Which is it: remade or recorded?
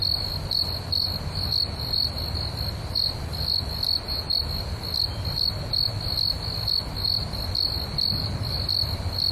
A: recorded